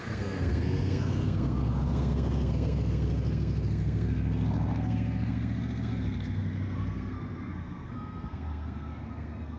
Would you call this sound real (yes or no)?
no